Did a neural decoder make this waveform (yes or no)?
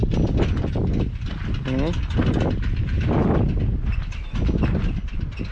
no